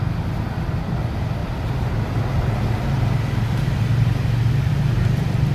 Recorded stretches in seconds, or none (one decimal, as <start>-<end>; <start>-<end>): 0.0-5.5